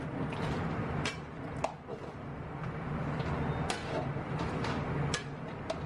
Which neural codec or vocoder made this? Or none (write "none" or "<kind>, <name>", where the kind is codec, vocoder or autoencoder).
none